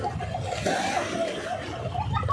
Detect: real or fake real